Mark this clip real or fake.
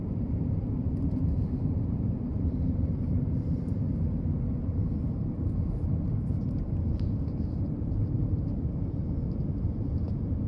fake